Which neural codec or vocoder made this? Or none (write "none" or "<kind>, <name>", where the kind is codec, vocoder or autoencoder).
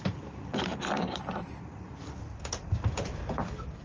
vocoder, BigVGAN v2